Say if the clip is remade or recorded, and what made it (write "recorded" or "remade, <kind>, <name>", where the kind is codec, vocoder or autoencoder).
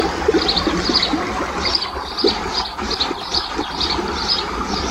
recorded